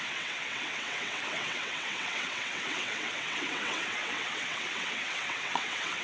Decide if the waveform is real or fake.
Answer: fake